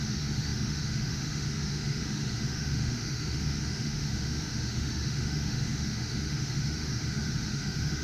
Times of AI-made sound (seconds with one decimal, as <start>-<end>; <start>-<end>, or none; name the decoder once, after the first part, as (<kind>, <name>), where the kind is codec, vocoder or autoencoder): 0.0-8.0 (autoencoder, DAC-VAE)